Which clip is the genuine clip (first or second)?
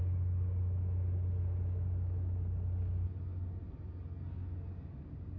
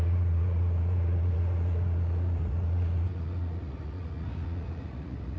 first